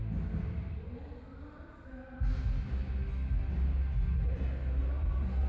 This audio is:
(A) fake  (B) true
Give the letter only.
B